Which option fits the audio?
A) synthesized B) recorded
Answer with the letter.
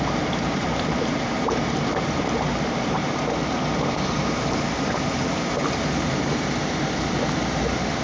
A